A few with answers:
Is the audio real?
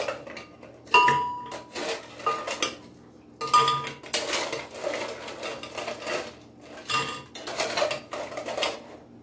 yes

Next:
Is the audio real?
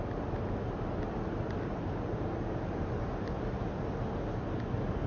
yes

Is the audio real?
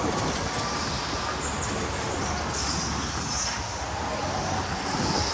yes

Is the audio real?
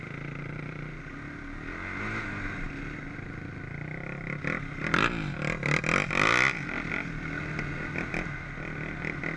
yes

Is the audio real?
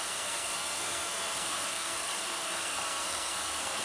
no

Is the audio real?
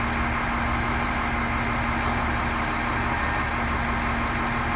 yes